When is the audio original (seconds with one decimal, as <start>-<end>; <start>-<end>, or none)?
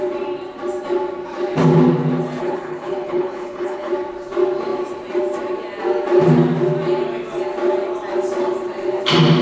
0.0-2.4; 3.9-9.4